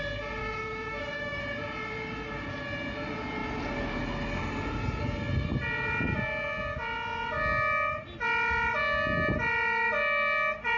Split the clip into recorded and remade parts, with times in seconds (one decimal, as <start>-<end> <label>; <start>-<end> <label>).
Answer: 0.0-0.4 recorded; 0.4-1.4 remade; 1.4-10.8 recorded